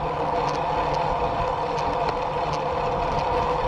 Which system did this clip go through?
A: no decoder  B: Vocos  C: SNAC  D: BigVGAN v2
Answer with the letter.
A